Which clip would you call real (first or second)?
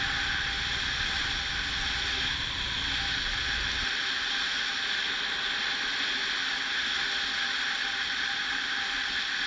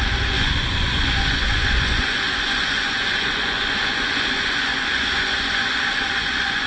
first